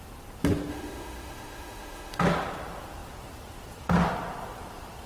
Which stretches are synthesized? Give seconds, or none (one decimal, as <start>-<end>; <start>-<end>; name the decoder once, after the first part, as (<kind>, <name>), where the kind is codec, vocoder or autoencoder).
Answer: 0.7-2.2 (autoencoder, DAC-VAE)